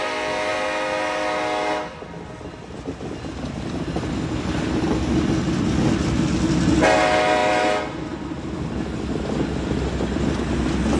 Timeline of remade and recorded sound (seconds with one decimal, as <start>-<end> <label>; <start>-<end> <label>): 0.0-11.0 recorded